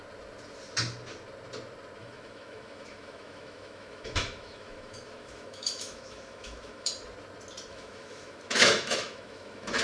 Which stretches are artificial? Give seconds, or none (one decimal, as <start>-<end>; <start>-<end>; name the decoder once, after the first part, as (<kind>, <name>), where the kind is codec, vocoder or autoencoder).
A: 2.0-6.9 (autoencoder, DAC-VAE); 7.7-9.8

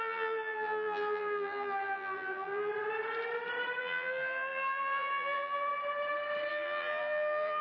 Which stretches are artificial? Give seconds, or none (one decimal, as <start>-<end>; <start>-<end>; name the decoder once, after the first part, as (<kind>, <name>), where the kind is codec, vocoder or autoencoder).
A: 0.0-2.7 (vocoder, BigVGAN v2); 3.8-5.7; 6.5-7.6

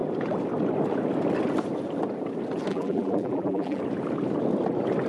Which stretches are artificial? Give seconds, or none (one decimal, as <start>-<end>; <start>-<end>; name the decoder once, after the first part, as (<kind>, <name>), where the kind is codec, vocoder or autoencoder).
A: 2.7-3.8 (vocoder, BigVGAN v2)

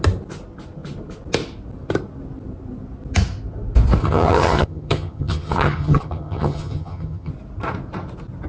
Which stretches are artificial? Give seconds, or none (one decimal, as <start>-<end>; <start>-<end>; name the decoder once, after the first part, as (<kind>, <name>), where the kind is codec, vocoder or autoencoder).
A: 4.0-7.3 (vocoder, HiFi-GAN)

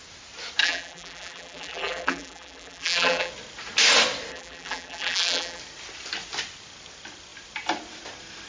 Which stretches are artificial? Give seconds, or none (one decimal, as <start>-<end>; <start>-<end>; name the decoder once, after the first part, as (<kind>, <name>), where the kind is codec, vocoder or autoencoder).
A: 0.6-3.3 (vocoder, BigVGAN v2); 4.3-5.6

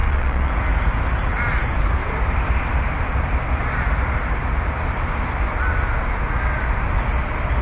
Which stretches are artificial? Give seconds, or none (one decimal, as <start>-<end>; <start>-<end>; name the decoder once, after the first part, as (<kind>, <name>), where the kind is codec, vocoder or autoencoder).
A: 0.0-0.5 (vocoder, Vocos)

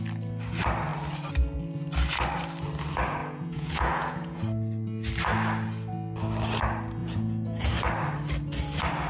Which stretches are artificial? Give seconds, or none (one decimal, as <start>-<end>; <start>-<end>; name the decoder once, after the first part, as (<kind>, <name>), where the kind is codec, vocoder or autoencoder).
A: 3.2-4.4 (vocoder, Vocos); 7.0-7.7

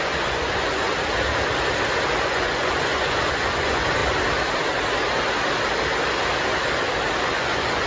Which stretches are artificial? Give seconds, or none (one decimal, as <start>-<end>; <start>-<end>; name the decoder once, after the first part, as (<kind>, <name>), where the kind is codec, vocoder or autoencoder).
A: 0.0-0.9 (vocoder, Vocos); 2.2-4.0; 7.2-7.9